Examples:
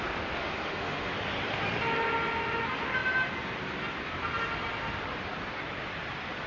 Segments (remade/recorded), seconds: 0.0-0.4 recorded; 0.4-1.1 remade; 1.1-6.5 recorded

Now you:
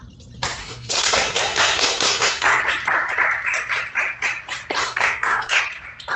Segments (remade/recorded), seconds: 0.0-0.6 recorded; 0.6-2.6 remade; 2.6-4.8 recorded; 4.8-5.6 remade; 5.6-6.2 recorded

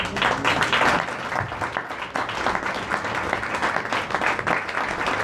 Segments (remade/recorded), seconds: 0.0-5.2 recorded

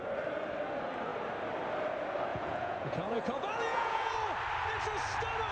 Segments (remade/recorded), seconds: 0.0-2.3 recorded; 2.3-4.1 remade; 4.1-5.5 recorded

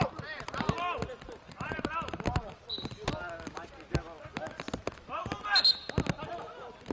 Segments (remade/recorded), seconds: 0.0-6.9 recorded

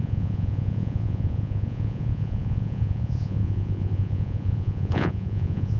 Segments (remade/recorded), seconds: 0.0-5.8 remade